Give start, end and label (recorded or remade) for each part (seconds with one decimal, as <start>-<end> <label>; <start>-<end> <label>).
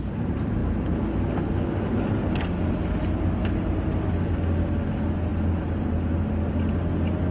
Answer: 0.0-7.3 recorded